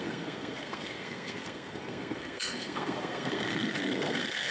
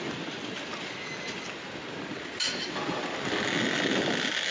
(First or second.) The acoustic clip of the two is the second